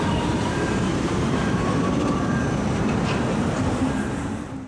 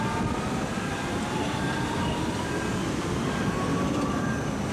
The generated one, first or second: first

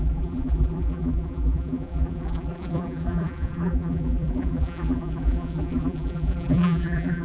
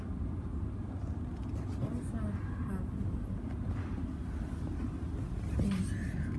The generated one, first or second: first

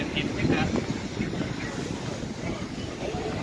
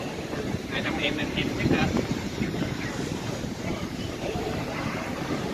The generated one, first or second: second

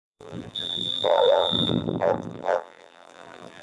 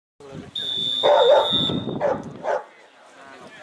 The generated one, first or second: first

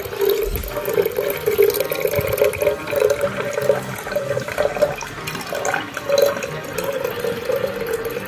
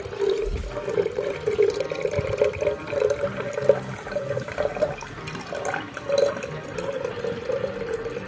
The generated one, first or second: second